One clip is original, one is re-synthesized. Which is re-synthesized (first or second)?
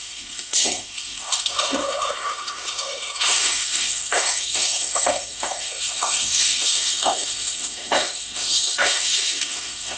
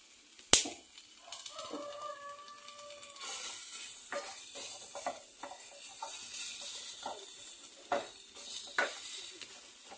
first